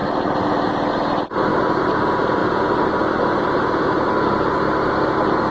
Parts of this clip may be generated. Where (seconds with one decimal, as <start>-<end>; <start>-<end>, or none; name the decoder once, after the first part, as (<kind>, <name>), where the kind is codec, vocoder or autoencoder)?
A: 1.5-2.0 (vocoder, BigVGAN v2); 2.4-4.1